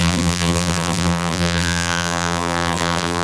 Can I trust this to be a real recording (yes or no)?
no